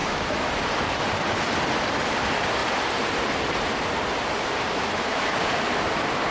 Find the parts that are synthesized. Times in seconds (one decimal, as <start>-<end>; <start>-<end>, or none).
0.0-0.5; 4.7-5.5